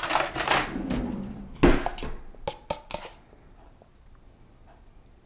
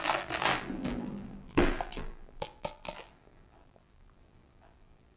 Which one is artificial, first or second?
second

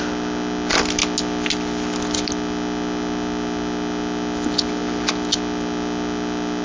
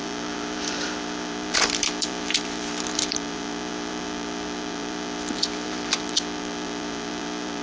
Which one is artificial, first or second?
second